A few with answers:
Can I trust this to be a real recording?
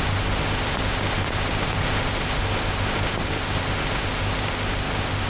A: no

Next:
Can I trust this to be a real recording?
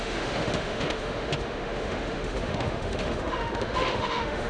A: no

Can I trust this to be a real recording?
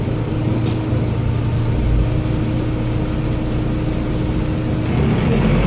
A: yes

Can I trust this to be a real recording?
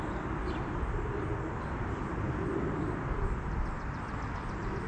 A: yes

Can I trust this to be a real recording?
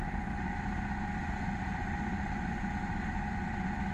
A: yes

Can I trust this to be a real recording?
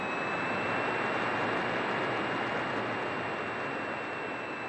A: yes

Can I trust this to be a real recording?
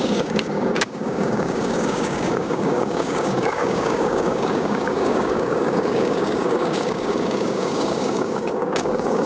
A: no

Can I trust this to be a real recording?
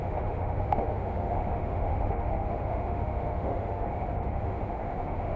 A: no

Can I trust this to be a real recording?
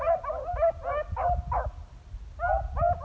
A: yes